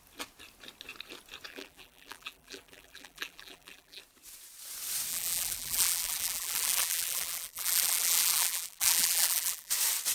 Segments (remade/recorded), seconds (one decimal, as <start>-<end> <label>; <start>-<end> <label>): 0.0-1.5 recorded; 1.5-4.0 remade; 4.0-5.1 recorded; 5.1-9.7 remade; 9.7-10.1 recorded